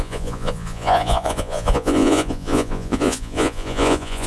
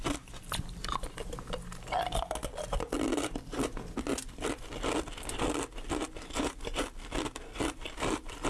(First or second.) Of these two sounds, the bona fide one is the second